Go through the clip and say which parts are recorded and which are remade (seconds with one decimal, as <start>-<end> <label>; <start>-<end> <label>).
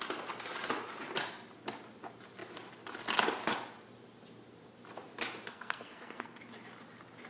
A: 0.0-5.5 recorded; 5.5-6.4 remade; 6.4-7.3 recorded